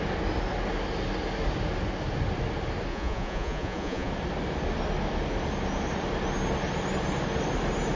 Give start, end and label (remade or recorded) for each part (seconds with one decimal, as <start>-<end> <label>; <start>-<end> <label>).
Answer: 0.0-2.9 recorded; 2.9-4.1 remade; 4.1-8.0 recorded